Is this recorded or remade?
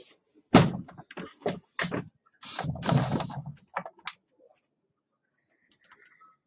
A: recorded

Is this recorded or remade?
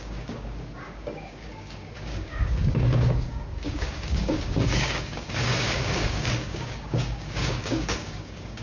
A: remade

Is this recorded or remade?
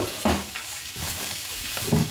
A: remade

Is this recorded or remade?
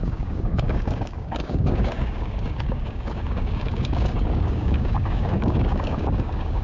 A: remade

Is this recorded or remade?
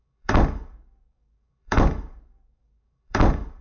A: remade